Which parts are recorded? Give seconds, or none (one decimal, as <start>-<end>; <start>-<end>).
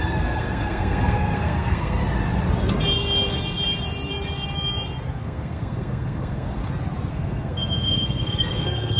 2.0-5.1; 6.6-7.1